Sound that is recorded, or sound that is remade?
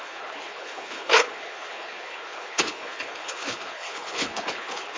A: remade